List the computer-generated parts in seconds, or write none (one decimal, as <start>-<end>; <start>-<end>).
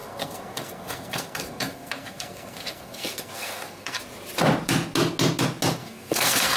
0.0-4.0; 5.8-6.6